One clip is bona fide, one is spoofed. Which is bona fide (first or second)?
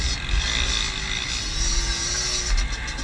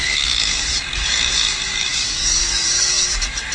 first